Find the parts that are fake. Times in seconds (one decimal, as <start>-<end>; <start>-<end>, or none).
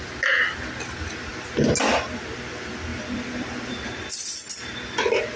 none